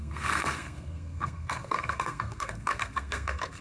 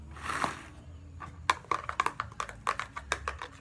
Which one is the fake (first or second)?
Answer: first